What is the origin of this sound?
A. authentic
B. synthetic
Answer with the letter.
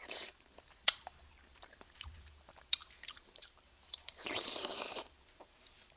B